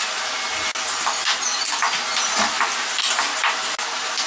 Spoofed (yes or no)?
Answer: no